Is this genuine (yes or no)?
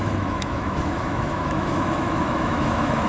no